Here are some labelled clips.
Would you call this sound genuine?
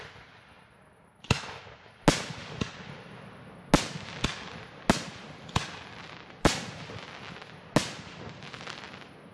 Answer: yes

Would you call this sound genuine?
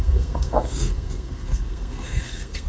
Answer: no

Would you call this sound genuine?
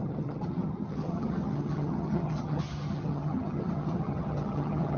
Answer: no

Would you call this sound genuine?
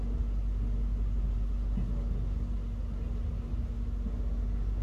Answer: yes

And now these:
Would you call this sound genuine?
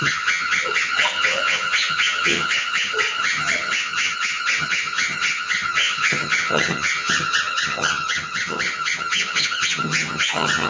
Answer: no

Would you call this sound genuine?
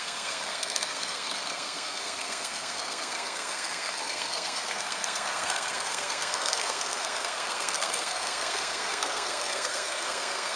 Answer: no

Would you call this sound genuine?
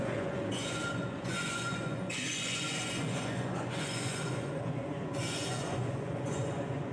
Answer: no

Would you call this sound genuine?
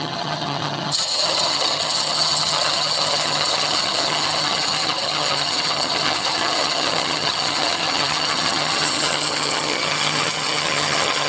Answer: no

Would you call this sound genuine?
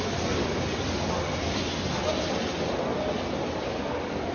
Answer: yes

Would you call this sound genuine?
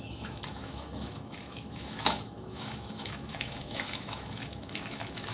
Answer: no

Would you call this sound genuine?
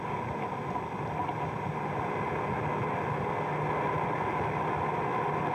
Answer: yes